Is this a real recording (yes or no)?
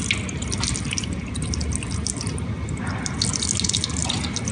yes